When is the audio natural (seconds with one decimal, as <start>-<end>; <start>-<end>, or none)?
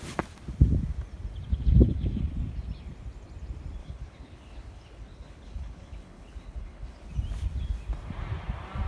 0.0-1.5; 2.3-3.8; 7.1-8.9